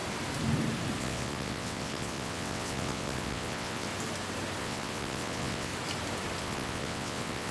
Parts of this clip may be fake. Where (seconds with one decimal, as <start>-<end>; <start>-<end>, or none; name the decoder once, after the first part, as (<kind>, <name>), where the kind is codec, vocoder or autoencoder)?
1.0-3.9 (vocoder, WaveNeXt); 4.6-5.7; 6.4-7.5